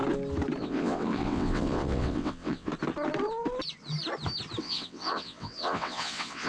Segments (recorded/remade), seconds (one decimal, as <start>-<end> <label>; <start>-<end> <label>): 0.0-0.6 recorded; 0.6-2.7 remade; 2.7-4.6 recorded; 4.6-6.5 remade